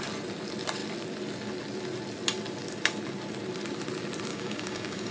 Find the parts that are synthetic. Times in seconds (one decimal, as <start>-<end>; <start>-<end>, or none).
4.3-5.1